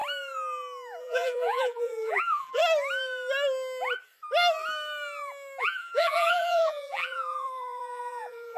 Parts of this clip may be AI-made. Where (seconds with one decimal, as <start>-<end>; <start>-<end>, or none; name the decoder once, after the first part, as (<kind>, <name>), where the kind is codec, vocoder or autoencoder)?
1.0-2.6 (vocoder, BigVGAN v2); 5.6-8.6